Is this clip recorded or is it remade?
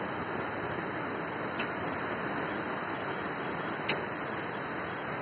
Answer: recorded